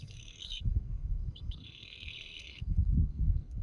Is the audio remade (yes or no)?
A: yes